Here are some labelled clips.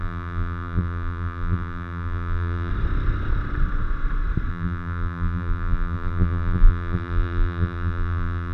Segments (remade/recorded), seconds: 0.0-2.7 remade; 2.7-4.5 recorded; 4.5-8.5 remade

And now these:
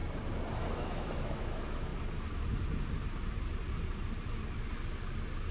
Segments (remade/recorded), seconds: 0.0-0.7 recorded; 0.7-1.9 remade; 1.9-5.5 recorded

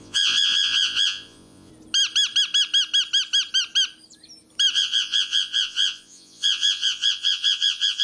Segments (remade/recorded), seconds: 0.0-1.7 remade; 1.7-4.7 recorded; 4.7-8.0 remade

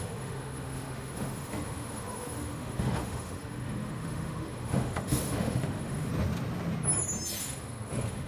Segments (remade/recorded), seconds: 0.0-6.1 remade; 6.1-7.4 recorded; 7.4-8.3 remade

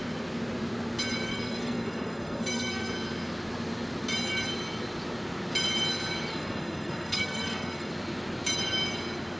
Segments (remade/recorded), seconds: 0.0-1.3 recorded; 1.3-2.9 remade; 2.9-6.3 recorded; 6.3-7.9 remade; 7.9-9.4 recorded

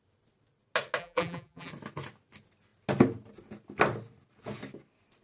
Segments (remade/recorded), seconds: 0.0-1.0 recorded; 1.0-1.7 remade; 1.7-5.2 recorded

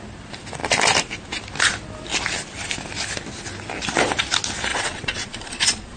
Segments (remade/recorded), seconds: 0.0-4.7 recorded; 4.7-6.0 remade